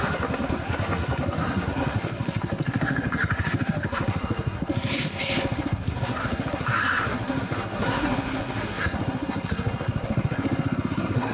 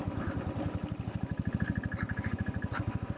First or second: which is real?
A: second